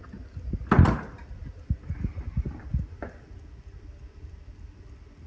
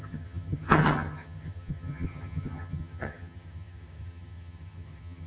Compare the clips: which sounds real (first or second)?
first